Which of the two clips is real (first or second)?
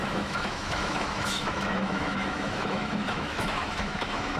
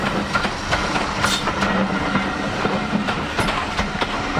second